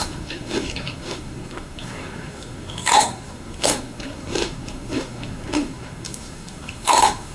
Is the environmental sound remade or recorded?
remade